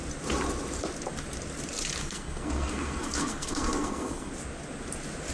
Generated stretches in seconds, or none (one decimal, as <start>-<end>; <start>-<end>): 2.0-4.3